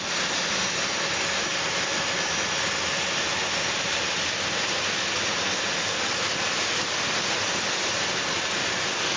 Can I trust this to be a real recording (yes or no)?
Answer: yes